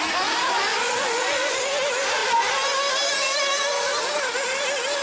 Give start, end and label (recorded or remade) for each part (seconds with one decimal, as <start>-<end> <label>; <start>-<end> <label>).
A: 0.0-0.7 recorded; 0.7-1.6 remade; 1.6-5.0 recorded